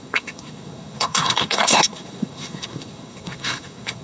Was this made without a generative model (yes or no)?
no